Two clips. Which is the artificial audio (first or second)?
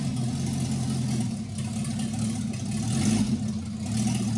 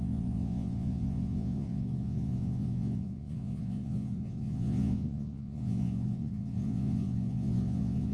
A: second